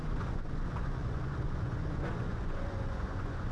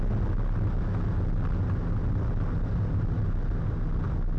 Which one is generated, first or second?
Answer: first